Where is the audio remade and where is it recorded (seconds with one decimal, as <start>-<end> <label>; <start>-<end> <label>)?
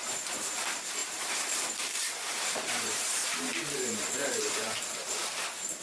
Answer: 0.0-5.8 remade